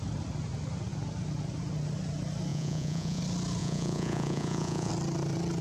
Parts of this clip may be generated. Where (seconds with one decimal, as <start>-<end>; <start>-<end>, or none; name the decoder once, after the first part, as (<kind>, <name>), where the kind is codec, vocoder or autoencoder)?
2.5-3.2 (vocoder, Vocos); 3.6-4.9